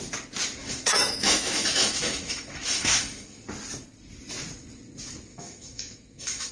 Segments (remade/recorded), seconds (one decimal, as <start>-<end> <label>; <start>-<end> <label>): 0.0-0.6 recorded; 0.6-3.4 remade; 3.4-5.3 recorded; 5.3-6.5 remade

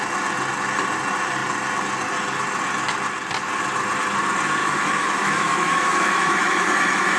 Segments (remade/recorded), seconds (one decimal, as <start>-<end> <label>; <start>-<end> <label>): 0.0-4.6 recorded; 4.6-7.2 remade

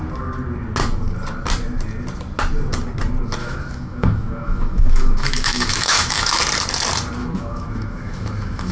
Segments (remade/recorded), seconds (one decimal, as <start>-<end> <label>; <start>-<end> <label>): 0.0-3.4 recorded; 3.4-6.4 remade; 6.4-7.2 recorded; 7.2-8.7 remade